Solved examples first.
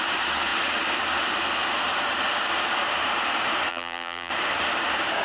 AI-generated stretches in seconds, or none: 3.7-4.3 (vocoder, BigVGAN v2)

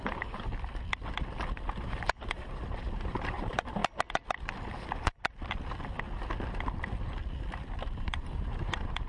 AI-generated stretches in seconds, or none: 0.0-0.5 (vocoder, BigVGAN v2); 1.8-3.8; 8.0-9.1

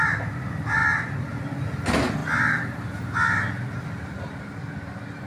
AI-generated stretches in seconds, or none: none